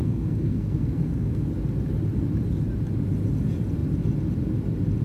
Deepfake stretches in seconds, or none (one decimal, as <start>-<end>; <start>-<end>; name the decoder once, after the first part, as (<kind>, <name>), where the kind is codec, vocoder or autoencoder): 0.0-1.5 (codec, SNAC)

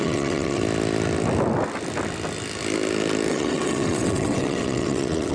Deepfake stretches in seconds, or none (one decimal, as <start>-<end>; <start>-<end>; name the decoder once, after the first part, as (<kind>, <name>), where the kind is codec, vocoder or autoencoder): 0.0-0.6 (vocoder, WaveNeXt); 3.3-5.3

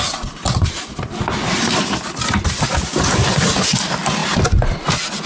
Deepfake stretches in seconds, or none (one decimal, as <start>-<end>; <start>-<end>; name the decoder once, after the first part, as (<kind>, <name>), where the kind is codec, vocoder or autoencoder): none

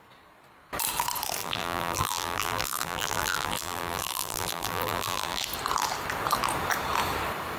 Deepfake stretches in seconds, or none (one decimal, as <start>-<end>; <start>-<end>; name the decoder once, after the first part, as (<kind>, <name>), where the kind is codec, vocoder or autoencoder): 1.4-5.4 (vocoder, BigVGAN v2)

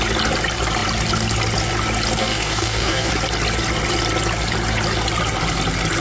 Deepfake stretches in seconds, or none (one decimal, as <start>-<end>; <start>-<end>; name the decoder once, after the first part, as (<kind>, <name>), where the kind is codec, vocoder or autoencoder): 2.2-3.1 (codec, DAC)

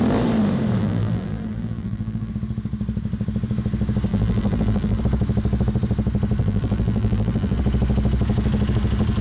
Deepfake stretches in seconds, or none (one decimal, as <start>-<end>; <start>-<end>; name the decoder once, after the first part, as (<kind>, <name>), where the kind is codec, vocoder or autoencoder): 0.8-2.3 (vocoder, BigVGAN v2); 4.1-5.0; 6.4-7.6

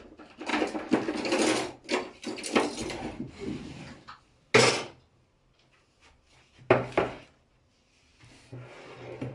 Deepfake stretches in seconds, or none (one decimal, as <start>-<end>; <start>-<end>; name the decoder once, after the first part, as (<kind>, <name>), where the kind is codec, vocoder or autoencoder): none

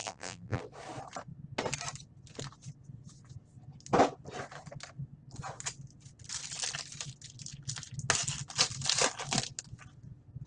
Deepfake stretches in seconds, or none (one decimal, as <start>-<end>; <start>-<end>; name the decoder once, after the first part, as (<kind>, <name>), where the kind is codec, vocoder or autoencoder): 0.0-0.6 (vocoder, BigVGAN v2)